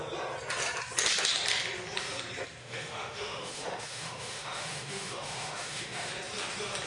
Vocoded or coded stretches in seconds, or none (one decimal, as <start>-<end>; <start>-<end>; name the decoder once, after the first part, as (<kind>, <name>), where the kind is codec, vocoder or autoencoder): 2.6-6.1 (autoencoder, DAC-VAE)